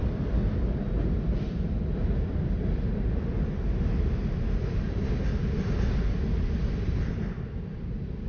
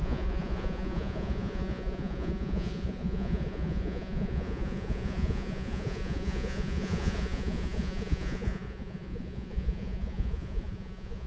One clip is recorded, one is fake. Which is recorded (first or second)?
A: first